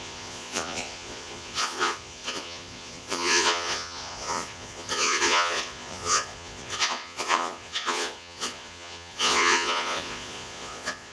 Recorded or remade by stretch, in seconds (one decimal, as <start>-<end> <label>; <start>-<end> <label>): 0.0-11.1 remade